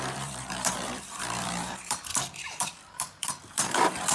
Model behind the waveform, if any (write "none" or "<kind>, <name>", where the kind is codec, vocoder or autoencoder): vocoder, BigVGAN v2